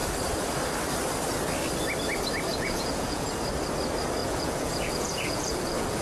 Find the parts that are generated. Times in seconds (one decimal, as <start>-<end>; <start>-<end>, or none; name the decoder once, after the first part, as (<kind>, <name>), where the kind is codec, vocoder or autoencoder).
2.5-3.3 (vocoder, Vocos); 4.2-6.0